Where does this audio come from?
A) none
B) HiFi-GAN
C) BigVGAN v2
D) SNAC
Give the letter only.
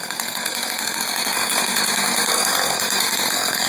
D